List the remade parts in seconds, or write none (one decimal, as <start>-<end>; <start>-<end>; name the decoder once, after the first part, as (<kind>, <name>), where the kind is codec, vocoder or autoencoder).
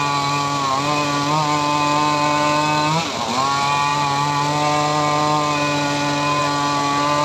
none